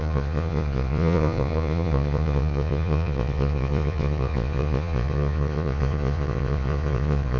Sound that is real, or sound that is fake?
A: fake